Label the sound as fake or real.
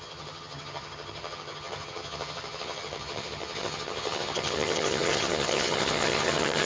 fake